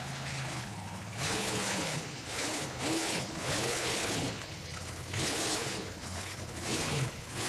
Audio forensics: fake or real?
fake